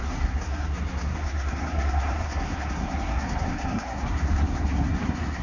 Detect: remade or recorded remade